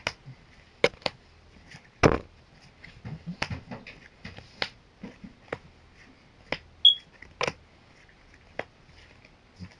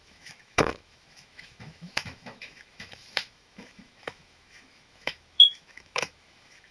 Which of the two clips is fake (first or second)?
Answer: second